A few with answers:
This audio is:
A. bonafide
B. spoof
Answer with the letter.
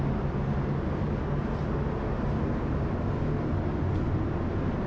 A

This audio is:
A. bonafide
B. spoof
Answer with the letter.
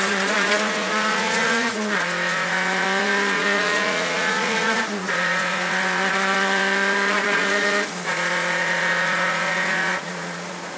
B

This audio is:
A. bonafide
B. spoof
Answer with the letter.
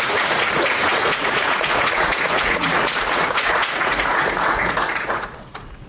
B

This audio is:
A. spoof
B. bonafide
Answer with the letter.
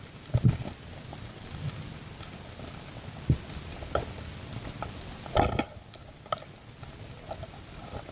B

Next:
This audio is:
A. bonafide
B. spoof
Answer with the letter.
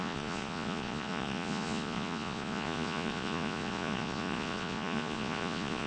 B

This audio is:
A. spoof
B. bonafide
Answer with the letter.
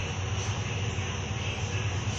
B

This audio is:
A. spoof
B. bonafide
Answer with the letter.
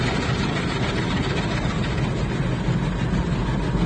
B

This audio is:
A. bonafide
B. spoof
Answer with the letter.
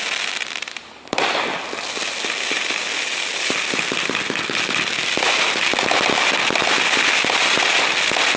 A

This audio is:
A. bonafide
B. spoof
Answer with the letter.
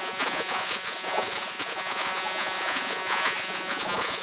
B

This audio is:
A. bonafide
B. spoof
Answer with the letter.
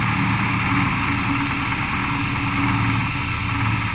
A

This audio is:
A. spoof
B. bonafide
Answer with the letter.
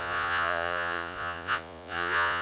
A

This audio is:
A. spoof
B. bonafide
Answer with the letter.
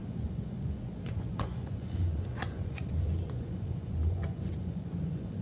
A